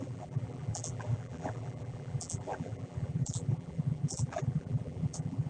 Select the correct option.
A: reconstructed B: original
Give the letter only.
A